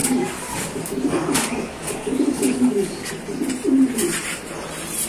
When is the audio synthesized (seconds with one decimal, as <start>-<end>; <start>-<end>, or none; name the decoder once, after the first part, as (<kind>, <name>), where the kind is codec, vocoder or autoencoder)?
0.0-3.1 (codec, DAC)

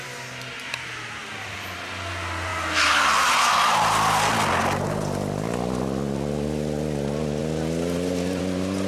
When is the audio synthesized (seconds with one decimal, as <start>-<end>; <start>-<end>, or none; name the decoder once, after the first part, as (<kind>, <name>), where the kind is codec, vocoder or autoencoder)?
2.5-3.1 (codec, DAC)

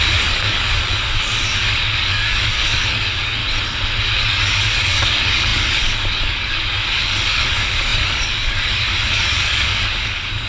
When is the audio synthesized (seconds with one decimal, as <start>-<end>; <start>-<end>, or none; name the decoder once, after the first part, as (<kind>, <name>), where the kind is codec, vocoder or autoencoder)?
0.0-3.4 (codec, DAC); 4.0-10.5

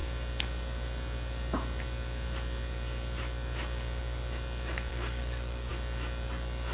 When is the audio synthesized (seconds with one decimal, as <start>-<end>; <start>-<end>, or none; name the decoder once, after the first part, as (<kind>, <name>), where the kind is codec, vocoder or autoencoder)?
4.9-5.7 (codec, DAC)

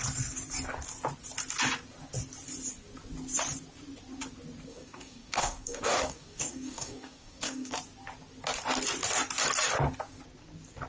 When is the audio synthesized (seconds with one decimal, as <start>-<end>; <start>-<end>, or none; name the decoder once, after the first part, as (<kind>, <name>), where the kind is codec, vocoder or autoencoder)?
4.7-7.7 (codec, DAC)

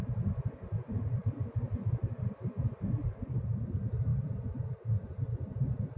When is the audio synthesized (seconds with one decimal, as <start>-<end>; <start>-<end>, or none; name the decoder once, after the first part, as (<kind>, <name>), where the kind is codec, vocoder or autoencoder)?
none